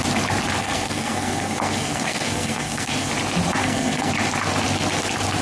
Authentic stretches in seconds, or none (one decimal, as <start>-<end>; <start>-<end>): 0.0-0.6; 3.1-3.6; 4.1-5.4